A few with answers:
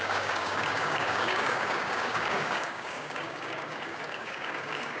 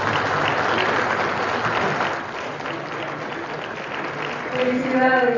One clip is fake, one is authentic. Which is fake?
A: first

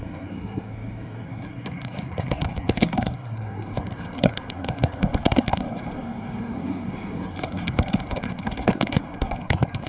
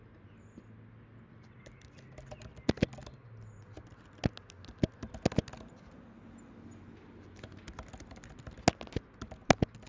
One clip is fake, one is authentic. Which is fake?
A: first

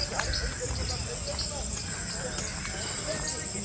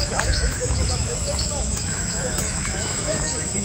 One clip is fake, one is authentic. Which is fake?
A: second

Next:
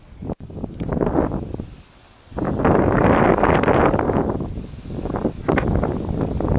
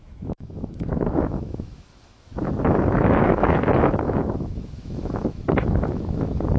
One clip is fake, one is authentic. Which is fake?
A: second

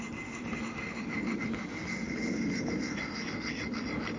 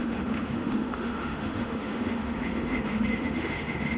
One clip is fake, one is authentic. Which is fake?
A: second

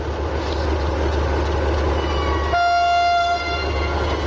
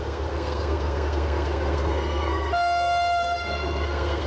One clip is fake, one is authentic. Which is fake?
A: second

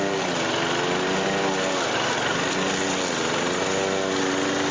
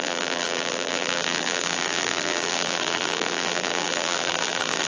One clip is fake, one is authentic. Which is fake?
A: second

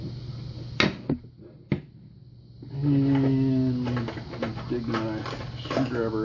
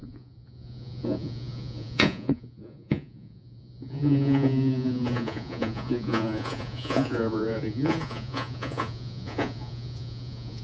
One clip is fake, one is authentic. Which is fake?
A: second